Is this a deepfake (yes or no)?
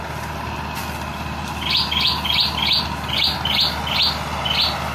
no